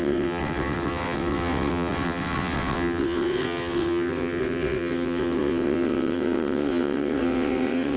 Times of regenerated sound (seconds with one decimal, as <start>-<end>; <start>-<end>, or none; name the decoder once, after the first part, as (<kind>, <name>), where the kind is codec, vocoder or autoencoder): 0.0-8.0 (vocoder, WaveNeXt)